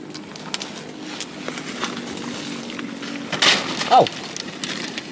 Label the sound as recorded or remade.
recorded